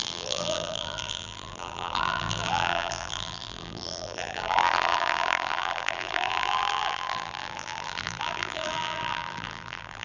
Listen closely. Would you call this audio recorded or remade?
remade